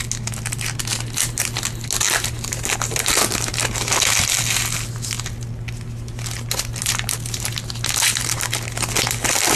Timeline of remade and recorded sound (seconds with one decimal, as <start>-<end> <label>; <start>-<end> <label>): 0.0-9.6 recorded